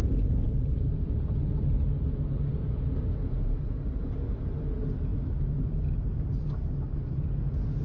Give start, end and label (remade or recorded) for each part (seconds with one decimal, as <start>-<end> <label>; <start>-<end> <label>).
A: 0.0-1.1 remade; 1.1-2.5 recorded; 2.5-4.1 remade; 4.1-7.8 recorded